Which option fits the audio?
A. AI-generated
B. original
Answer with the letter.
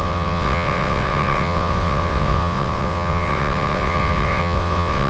A